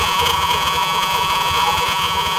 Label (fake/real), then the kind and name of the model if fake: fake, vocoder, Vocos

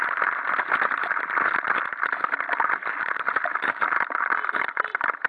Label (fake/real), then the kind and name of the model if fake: real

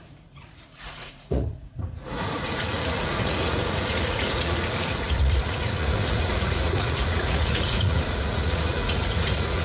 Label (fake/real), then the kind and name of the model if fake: fake, vocoder, Vocos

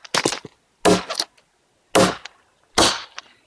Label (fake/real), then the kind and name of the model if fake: real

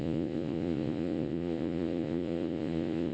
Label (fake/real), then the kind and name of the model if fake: fake, vocoder, Vocos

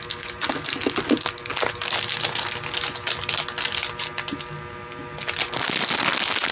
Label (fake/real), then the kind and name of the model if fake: real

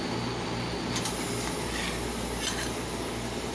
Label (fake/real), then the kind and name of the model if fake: real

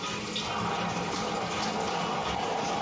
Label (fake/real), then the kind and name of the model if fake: real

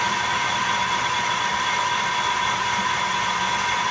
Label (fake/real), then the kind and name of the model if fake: real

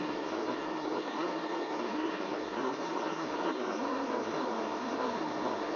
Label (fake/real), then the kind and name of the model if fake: fake, codec, SNAC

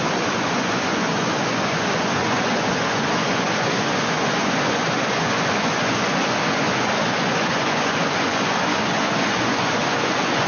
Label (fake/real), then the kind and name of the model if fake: fake, vocoder, Vocos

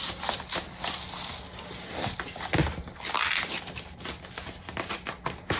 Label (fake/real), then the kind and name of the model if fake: real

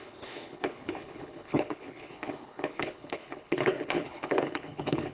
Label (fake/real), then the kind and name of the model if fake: fake, codec, HILCodec